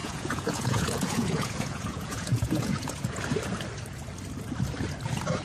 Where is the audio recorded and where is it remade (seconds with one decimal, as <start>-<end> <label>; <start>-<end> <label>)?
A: 0.0-3.2 remade; 3.2-5.4 recorded